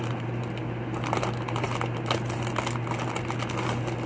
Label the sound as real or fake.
real